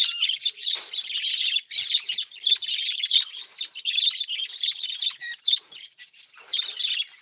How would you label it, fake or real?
real